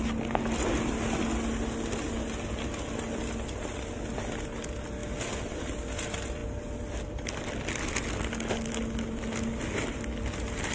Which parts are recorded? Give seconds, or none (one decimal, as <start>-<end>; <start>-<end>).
0.0-10.7